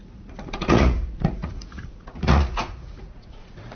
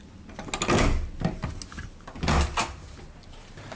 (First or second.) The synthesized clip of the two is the first